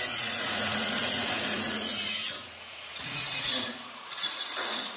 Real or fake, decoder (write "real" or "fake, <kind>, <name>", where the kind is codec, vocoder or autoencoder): fake, vocoder, Vocos